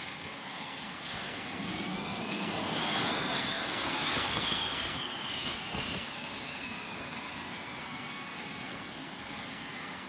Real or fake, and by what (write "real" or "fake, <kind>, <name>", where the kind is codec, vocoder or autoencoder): fake, codec, SNAC